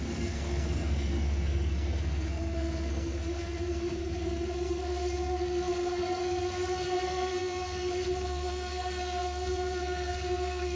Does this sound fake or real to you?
fake